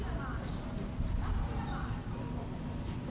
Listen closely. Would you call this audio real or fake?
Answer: fake